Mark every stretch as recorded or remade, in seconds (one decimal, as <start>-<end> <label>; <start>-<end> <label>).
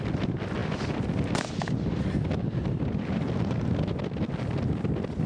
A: 0.0-5.3 recorded